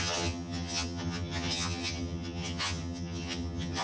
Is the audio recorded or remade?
remade